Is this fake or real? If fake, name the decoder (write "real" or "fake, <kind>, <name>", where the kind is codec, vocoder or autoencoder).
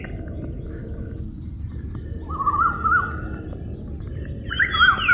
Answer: real